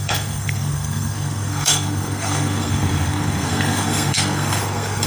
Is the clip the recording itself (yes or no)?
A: no